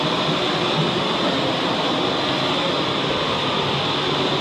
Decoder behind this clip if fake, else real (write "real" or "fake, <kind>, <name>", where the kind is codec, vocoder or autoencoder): real